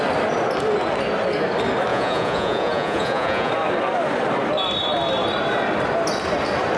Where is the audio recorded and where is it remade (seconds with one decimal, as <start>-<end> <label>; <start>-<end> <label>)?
0.0-1.9 recorded; 1.9-3.5 remade; 3.5-6.8 recorded